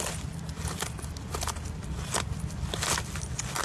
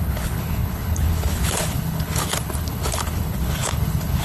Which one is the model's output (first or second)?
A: second